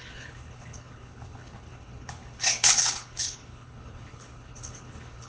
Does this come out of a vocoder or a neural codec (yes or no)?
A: yes